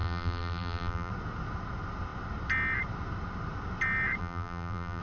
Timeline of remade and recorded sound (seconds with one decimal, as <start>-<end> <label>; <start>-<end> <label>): 0.0-1.1 remade; 1.1-4.2 recorded; 4.2-5.0 remade